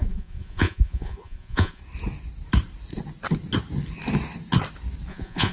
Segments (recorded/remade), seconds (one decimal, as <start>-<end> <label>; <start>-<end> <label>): 0.0-1.8 remade; 1.8-5.1 recorded; 5.1-5.5 remade